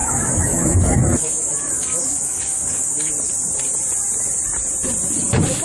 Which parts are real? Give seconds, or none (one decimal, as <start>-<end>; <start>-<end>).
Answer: 3.1-5.6